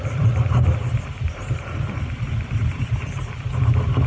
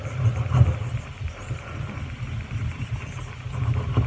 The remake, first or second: first